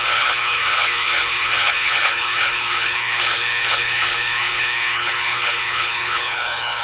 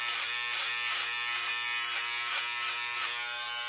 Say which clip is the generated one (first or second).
first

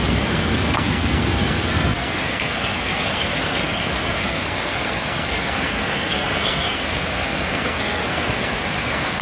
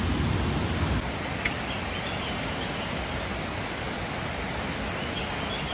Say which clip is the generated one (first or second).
first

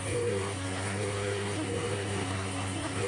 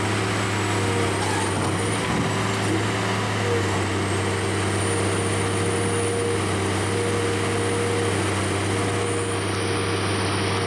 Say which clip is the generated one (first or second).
first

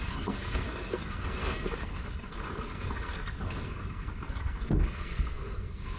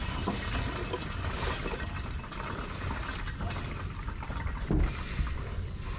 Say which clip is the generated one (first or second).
first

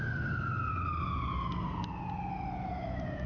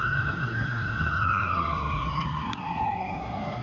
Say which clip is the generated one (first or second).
second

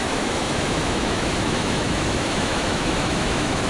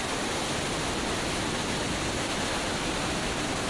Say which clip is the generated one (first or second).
first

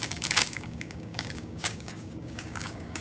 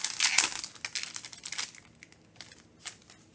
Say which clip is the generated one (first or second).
first